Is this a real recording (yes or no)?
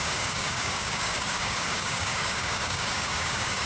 no